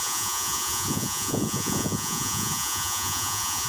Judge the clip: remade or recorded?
remade